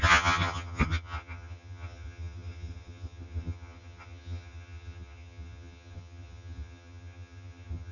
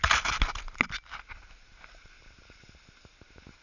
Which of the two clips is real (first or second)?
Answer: second